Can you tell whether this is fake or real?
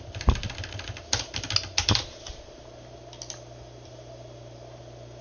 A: real